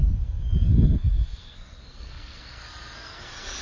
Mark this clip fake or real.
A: fake